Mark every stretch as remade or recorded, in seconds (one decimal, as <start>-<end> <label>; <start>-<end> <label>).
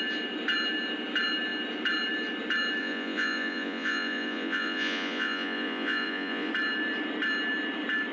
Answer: 0.0-2.8 recorded; 2.8-6.5 remade; 6.5-8.1 recorded